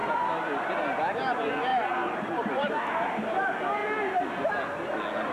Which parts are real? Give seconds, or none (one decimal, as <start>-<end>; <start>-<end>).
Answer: 0.0-1.7; 2.7-5.3